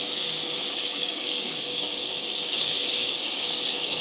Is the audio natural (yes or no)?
no